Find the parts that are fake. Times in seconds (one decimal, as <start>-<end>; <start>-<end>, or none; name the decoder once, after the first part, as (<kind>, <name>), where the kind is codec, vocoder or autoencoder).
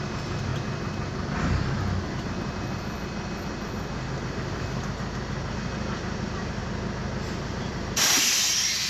0.0-0.5 (vocoder, BigVGAN v2); 5.5-6.6; 7.3-8.9